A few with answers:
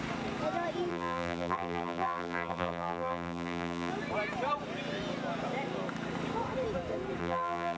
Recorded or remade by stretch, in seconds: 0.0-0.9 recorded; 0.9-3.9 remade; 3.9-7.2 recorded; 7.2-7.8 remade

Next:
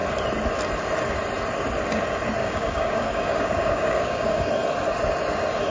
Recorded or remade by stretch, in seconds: 0.0-2.4 recorded; 2.4-4.5 remade; 4.5-5.7 recorded

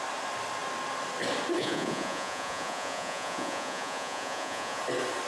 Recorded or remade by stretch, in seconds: 0.0-1.6 recorded; 1.6-4.8 remade; 4.8-5.3 recorded

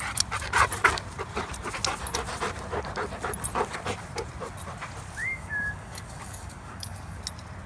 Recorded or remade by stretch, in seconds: 0.0-5.2 recorded; 5.2-7.2 remade; 7.2-7.7 recorded

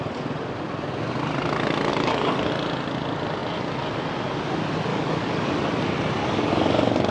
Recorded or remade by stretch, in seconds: 0.0-1.9 recorded; 1.9-2.5 remade; 2.5-4.9 recorded; 4.9-5.5 remade; 5.5-6.2 recorded; 6.2-7.1 remade